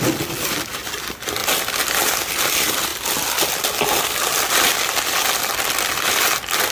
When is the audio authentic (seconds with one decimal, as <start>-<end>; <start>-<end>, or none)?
0.0-6.7